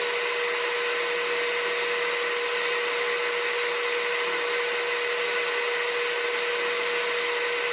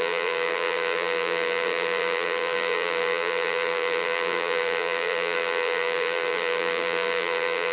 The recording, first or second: first